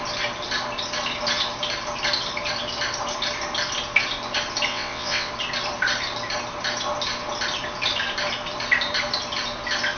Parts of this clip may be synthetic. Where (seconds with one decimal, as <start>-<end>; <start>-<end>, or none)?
4.7-5.3